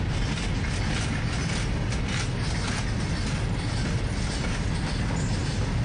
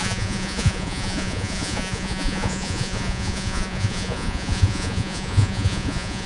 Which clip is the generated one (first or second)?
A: second